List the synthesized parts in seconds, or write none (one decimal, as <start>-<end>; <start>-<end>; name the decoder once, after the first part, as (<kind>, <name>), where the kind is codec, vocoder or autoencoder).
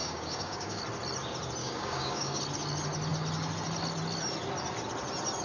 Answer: 0.0-0.8 (codec, DAC); 1.6-2.4